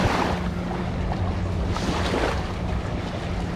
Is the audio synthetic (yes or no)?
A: no